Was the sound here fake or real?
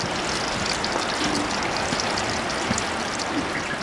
real